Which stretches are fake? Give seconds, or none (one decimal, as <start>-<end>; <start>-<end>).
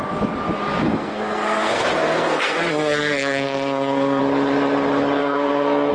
0.9-4.2; 5.2-5.9